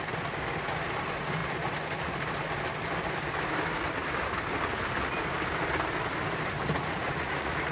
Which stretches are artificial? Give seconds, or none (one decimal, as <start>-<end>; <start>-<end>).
6.6-7.7